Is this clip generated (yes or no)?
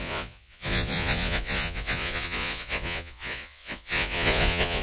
yes